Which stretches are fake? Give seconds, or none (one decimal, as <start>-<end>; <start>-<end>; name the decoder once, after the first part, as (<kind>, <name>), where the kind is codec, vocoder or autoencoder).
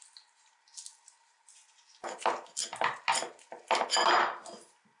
none